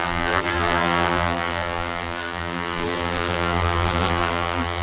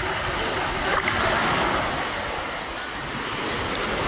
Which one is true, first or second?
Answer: second